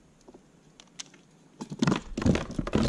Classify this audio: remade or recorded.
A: recorded